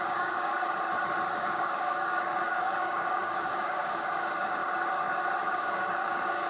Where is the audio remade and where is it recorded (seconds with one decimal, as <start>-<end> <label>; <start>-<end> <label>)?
0.0-0.5 remade; 0.5-1.4 recorded; 1.4-4.6 remade; 4.6-5.4 recorded; 5.4-6.5 remade